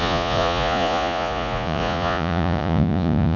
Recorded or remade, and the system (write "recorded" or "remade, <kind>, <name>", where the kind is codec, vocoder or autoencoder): remade, vocoder, Vocos